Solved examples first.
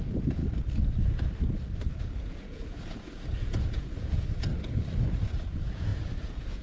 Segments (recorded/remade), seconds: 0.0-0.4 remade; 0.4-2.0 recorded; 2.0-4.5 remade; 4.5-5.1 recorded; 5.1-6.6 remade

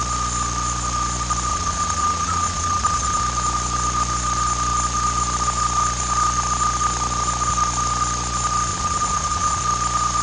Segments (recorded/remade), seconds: 0.0-1.5 recorded; 1.5-3.2 remade; 3.2-8.7 recorded; 8.7-9.6 remade; 9.6-10.2 recorded

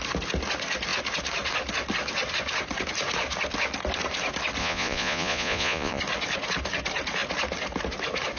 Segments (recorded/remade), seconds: 0.0-4.6 recorded; 4.6-6.0 remade; 6.0-8.4 recorded

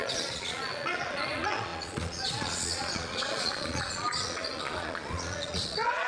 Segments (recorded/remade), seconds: 0.0-6.1 remade

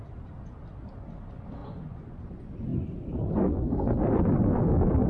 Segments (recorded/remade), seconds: 0.0-1.6 recorded; 1.6-2.2 remade; 2.2-5.1 recorded

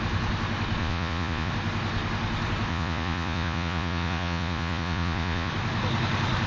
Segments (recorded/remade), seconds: 0.0-0.8 recorded; 0.8-1.5 remade; 1.5-2.7 recorded; 2.7-5.5 remade; 5.5-6.5 recorded